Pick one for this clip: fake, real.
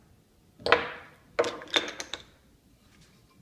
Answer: real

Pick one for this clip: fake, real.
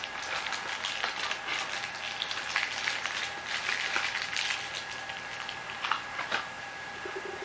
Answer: real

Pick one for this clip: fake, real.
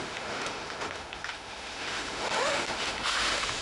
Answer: fake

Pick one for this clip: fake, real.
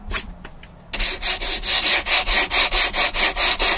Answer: real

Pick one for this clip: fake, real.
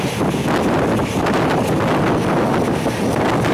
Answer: real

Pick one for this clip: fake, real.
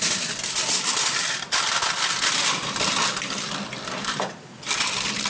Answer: real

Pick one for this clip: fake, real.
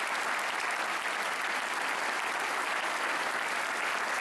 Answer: real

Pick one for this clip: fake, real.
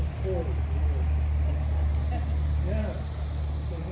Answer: real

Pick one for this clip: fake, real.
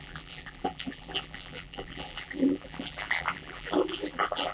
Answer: fake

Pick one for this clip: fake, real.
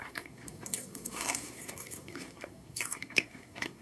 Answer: fake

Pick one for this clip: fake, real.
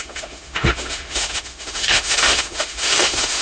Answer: fake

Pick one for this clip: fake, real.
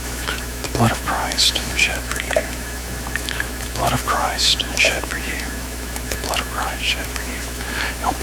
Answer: fake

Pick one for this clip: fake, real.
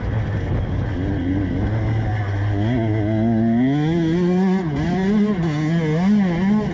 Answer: real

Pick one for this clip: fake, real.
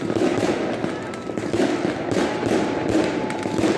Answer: real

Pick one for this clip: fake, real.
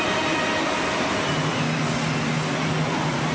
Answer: real